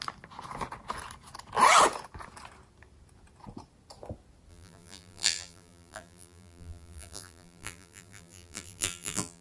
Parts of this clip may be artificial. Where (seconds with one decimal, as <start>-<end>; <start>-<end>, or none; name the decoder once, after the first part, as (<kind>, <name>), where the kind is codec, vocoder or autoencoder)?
4.5-9.4 (vocoder, BigVGAN v2)